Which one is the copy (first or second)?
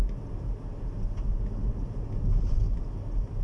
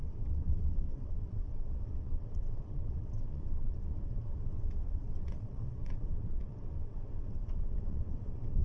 second